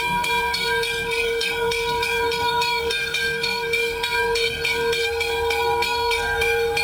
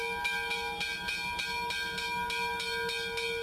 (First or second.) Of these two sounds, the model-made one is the first